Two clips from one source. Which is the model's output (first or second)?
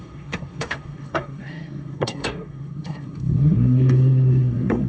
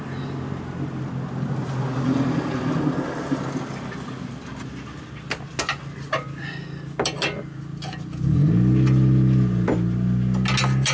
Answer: first